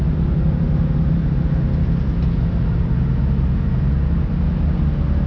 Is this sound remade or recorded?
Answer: recorded